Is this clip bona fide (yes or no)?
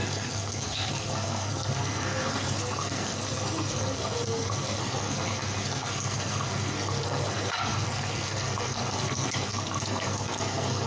no